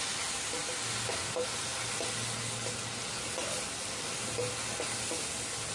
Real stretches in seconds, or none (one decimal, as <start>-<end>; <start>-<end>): 0.0-5.7

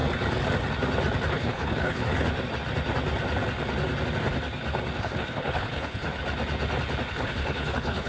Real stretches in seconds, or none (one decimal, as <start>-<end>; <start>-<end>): 0.0-1.3; 2.1-5.0; 6.2-7.1